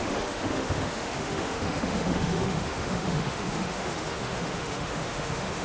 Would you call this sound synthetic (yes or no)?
yes